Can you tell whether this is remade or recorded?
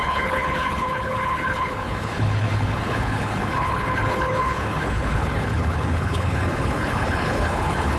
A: remade